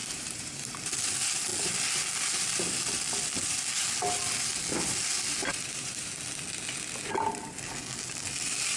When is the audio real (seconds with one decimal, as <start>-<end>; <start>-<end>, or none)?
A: 0.7-5.5; 6.1-8.8